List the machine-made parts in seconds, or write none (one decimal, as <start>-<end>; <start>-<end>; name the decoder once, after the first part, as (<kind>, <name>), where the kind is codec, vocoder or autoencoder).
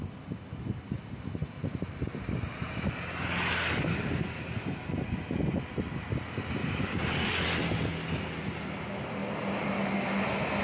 1.4-2.8 (vocoder, BigVGAN v2); 6.6-7.2